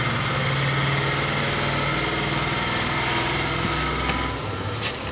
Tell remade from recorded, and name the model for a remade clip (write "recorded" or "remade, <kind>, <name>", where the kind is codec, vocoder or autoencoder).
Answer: recorded